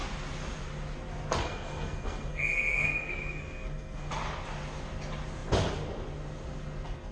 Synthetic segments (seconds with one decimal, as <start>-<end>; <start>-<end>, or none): 1.4-4.1